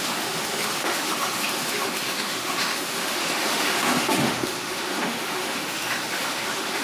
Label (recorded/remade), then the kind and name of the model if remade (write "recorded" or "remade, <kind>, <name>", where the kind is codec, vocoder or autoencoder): remade, autoencoder, DAC-VAE